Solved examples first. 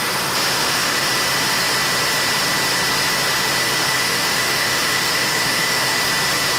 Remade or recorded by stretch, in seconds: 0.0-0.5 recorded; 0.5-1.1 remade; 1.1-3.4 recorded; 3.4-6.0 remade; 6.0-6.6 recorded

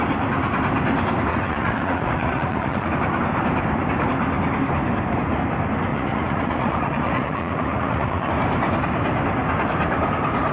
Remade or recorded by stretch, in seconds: 0.0-1.3 recorded; 1.3-2.9 remade; 2.9-5.9 recorded; 5.9-8.3 remade; 8.3-10.5 recorded

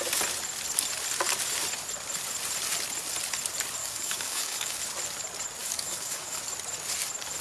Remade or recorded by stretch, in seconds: 0.0-3.8 recorded; 3.8-4.8 remade; 4.8-5.6 recorded; 5.6-6.4 remade; 6.4-7.4 recorded

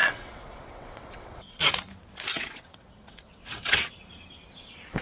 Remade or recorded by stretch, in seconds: 0.0-1.6 remade; 1.6-2.3 recorded; 2.3-4.0 remade; 4.0-5.0 recorded

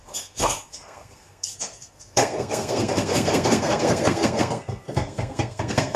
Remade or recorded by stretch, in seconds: 0.0-6.0 remade

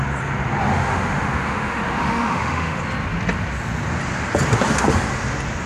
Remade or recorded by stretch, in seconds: 0.0-0.7 recorded; 0.7-2.8 remade; 2.8-5.7 recorded

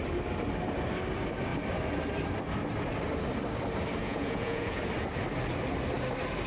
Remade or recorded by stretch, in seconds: 0.0-4.0 recorded; 4.0-4.8 remade; 4.8-6.5 recorded

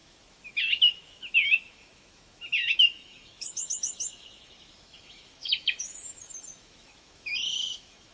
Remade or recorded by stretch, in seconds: 0.0-8.1 remade